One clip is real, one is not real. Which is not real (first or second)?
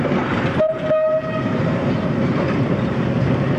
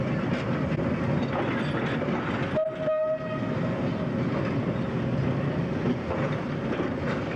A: first